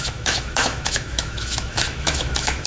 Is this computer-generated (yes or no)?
yes